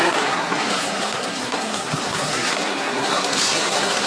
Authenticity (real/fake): fake